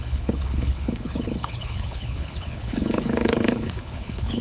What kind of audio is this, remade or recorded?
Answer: remade